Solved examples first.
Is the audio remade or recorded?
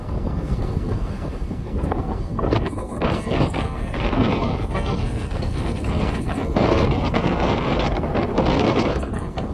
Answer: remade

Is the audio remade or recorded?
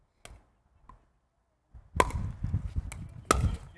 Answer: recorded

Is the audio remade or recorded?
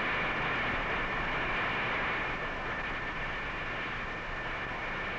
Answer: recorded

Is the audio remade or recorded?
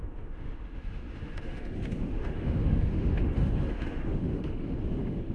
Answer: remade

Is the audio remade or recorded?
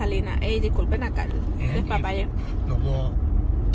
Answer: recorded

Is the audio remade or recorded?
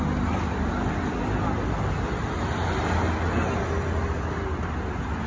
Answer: recorded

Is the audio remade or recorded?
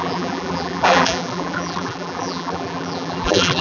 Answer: remade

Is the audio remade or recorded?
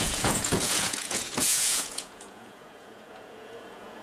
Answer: remade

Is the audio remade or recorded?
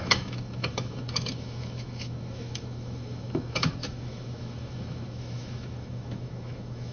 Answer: remade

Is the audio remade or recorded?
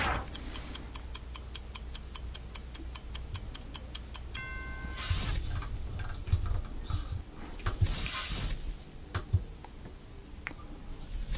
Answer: recorded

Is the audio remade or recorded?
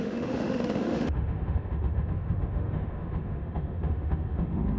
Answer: remade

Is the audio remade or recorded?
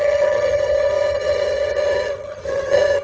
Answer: remade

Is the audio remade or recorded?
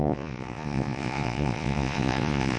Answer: remade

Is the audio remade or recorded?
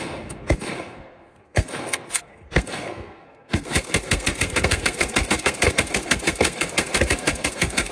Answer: remade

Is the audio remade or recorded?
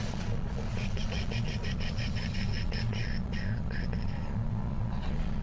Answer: remade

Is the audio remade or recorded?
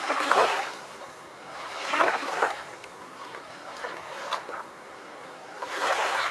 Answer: remade